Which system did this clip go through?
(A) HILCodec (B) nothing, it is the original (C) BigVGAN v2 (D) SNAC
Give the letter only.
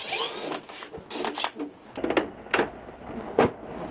B